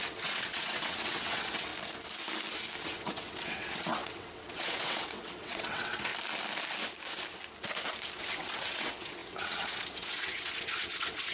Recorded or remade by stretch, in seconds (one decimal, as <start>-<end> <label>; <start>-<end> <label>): 0.0-1.7 remade; 1.7-2.8 recorded; 2.8-6.1 remade; 6.1-8.2 recorded; 8.2-11.3 remade